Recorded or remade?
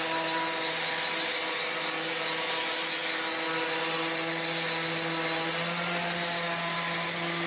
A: recorded